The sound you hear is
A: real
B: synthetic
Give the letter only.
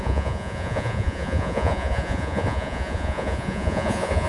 B